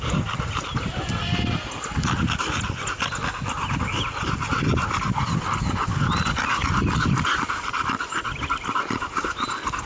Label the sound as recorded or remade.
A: recorded